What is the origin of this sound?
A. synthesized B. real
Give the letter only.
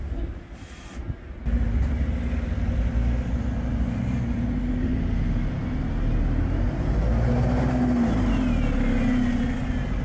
B